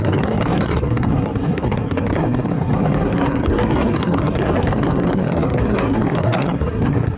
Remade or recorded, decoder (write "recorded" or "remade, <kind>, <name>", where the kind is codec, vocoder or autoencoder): remade, codec, SNAC